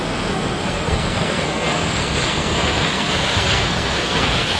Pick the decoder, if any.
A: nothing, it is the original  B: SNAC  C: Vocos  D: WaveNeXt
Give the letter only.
B